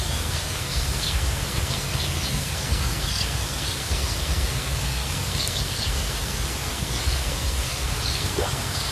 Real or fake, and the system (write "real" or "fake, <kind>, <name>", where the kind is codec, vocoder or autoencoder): fake, codec, SNAC